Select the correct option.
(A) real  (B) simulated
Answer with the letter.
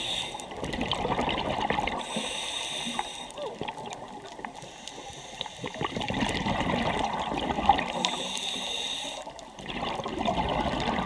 A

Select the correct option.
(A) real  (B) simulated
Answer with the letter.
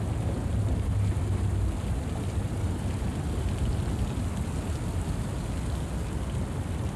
A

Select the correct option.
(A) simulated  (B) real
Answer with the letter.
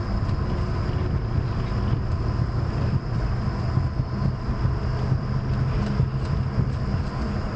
B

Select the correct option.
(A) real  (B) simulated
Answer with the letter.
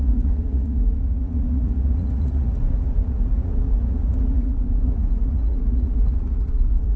B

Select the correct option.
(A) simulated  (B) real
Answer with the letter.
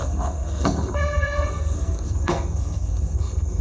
A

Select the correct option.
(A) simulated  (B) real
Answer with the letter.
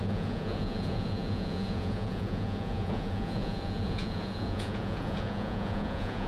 A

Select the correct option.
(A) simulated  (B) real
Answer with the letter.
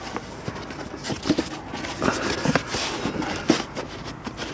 B